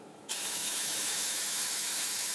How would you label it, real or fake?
fake